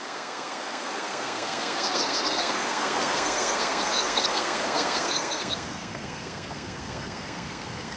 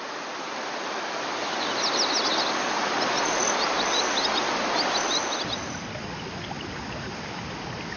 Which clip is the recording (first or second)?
second